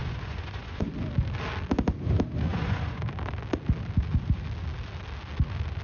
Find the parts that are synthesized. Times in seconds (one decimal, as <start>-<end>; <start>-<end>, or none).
0.0-0.9; 2.5-3.0